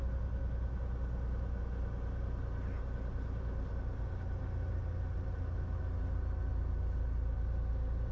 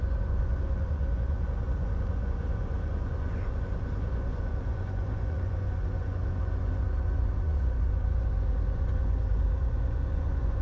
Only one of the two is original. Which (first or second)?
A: first